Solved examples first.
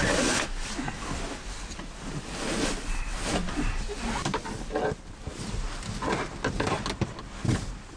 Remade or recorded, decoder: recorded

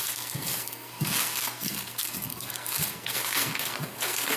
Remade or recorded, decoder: remade, codec, SNAC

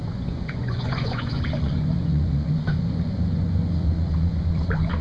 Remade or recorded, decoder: remade, vocoder, Vocos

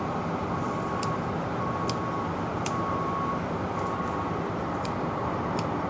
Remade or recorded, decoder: remade, vocoder, BigVGAN v2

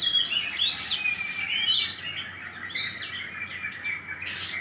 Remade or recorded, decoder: recorded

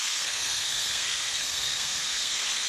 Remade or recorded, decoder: remade, codec, SNAC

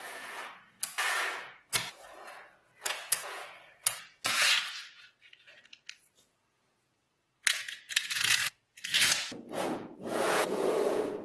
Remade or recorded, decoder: remade, vocoder, Vocos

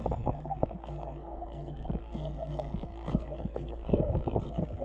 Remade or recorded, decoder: remade, codec, SNAC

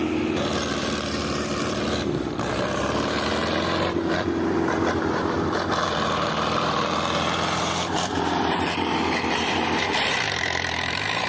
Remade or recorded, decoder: remade, vocoder, BigVGAN v2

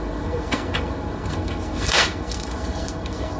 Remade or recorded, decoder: remade, codec, SNAC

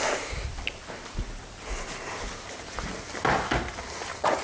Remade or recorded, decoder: recorded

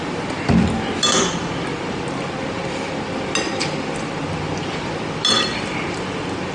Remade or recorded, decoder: recorded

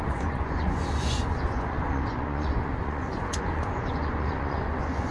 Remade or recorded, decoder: remade, vocoder, Vocos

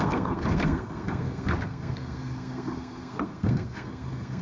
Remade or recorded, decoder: remade, codec, SNAC